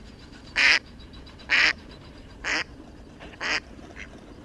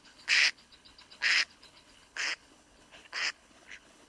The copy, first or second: second